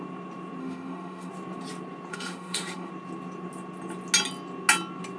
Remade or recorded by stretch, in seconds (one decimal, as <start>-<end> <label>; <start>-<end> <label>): 0.0-0.6 recorded; 0.6-1.3 remade; 1.3-2.1 recorded; 2.1-2.9 remade; 2.9-5.2 recorded